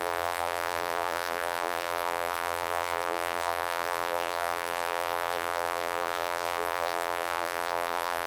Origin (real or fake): fake